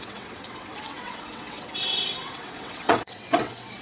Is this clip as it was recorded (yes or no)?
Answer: no